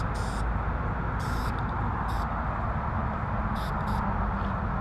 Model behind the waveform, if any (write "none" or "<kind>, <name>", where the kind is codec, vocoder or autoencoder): none